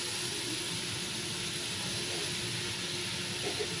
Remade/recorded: recorded